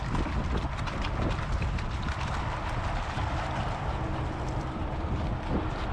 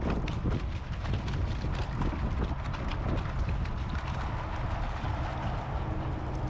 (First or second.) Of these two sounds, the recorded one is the second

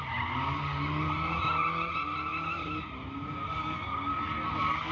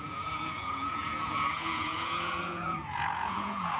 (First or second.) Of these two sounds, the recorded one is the first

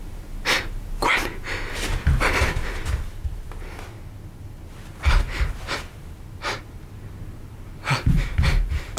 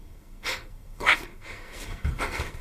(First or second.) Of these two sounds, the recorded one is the first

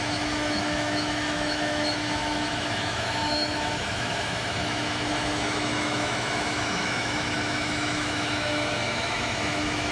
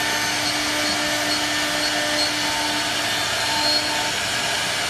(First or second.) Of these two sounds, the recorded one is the second